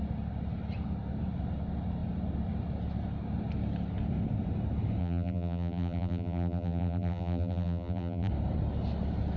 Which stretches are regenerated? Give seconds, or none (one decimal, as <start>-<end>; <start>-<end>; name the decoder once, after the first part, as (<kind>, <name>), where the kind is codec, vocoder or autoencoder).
5.0-8.3 (vocoder, BigVGAN v2)